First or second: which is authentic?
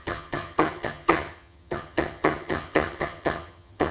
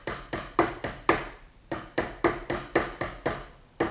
second